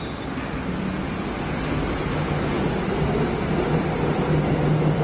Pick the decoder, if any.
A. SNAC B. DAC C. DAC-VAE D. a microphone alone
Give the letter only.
D